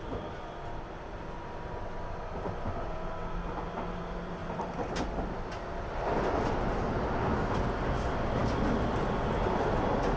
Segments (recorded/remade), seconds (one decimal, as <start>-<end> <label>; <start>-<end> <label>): 0.0-4.4 recorded; 4.4-5.0 remade; 5.0-10.2 recorded